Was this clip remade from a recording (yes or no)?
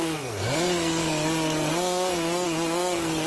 yes